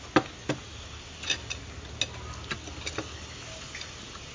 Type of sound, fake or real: real